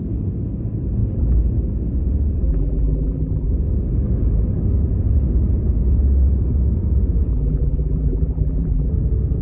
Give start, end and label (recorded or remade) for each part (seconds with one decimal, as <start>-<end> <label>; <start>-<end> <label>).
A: 0.0-2.5 recorded; 2.5-3.5 remade; 3.5-7.3 recorded; 7.3-8.9 remade; 8.9-9.4 recorded